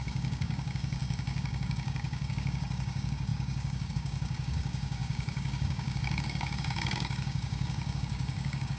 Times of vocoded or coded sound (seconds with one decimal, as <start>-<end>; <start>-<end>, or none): 0.0-8.8